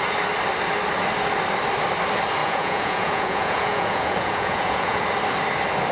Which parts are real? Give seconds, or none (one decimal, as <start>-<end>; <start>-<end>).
0.0-2.4; 5.0-5.9